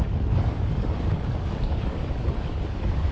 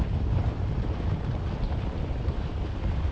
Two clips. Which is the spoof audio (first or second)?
first